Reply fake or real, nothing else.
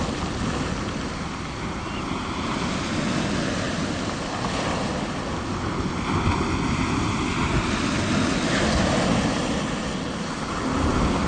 real